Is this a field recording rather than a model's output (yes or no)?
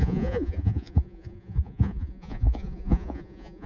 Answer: no